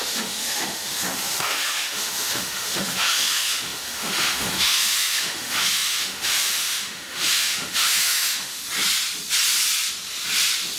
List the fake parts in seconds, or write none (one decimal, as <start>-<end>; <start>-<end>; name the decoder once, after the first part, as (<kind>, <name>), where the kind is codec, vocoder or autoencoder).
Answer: 0.0-8.6 (autoencoder, DAC-VAE)